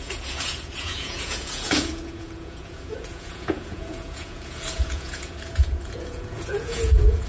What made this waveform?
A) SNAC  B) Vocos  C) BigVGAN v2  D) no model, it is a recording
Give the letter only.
B